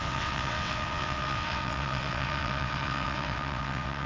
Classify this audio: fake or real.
fake